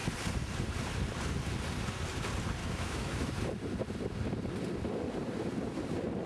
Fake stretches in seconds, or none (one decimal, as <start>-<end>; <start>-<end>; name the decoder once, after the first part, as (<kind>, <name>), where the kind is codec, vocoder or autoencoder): 2.6-3.3 (autoencoder, DAC-VAE)